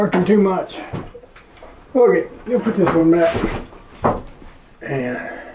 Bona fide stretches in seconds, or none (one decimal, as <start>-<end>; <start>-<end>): 0.0-1.5; 2.0-5.5